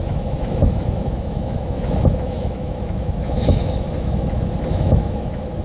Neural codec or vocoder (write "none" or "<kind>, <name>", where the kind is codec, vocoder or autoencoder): autoencoder, DAC-VAE